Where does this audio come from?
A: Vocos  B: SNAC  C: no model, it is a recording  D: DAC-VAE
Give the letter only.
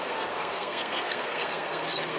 B